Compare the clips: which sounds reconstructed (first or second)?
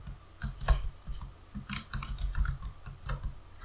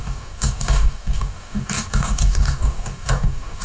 second